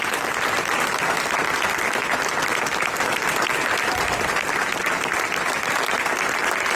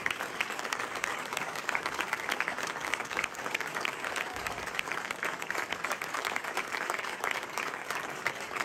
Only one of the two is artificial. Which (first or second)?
second